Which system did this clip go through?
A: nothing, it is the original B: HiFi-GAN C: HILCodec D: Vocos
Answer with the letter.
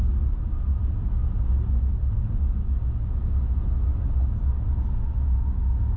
A